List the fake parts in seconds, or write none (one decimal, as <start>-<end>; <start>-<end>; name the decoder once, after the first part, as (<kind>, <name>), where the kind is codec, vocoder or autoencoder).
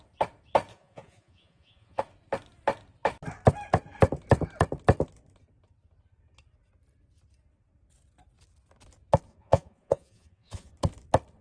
0.7-2.0 (vocoder, Vocos); 9.3-10.7